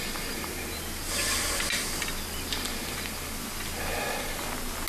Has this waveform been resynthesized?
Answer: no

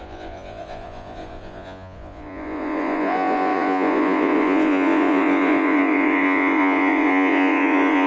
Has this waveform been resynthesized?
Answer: yes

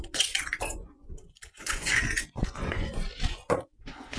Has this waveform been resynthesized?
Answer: yes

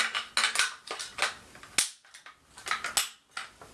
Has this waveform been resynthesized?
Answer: no